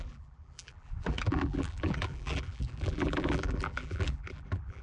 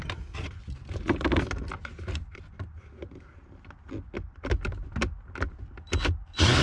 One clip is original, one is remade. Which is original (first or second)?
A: second